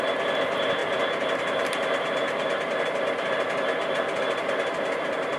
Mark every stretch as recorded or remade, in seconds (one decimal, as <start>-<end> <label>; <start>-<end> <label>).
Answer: 0.0-5.4 recorded

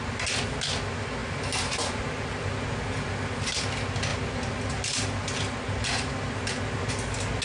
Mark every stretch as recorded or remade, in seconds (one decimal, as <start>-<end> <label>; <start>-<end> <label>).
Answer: 0.0-7.4 recorded

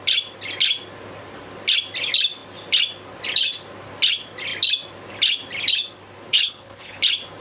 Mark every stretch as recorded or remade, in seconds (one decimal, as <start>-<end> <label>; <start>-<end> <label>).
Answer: 0.0-6.3 recorded; 6.3-7.0 remade; 7.0-7.4 recorded

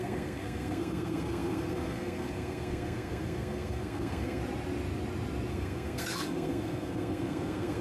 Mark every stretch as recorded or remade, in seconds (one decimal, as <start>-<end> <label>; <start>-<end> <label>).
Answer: 0.0-4.4 remade; 4.4-5.5 recorded; 5.5-7.8 remade

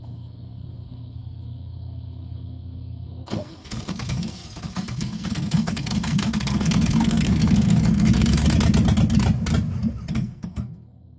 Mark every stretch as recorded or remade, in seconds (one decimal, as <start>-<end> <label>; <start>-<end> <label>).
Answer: 0.0-8.4 remade; 8.4-10.1 recorded; 10.1-11.2 remade